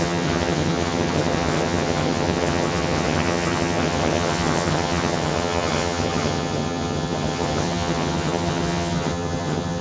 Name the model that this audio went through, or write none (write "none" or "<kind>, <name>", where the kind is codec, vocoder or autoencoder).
vocoder, HiFi-GAN